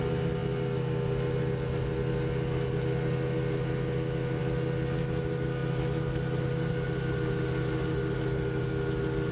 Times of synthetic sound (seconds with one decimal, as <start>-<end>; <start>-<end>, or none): none